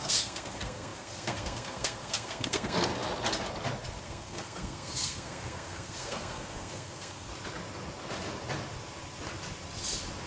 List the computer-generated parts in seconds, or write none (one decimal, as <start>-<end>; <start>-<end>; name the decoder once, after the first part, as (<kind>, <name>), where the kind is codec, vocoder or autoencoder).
0.0-2.9 (codec, SNAC); 4.0-7.3